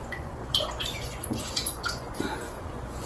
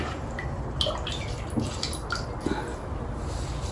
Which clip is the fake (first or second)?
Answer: first